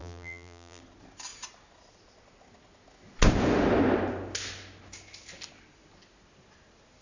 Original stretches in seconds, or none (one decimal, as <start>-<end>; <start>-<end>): 0.8-7.0